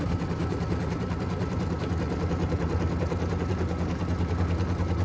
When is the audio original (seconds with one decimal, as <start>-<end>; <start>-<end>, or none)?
none